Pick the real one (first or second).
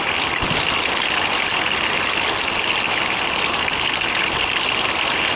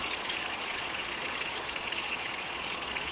first